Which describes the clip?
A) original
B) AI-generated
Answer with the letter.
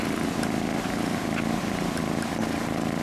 A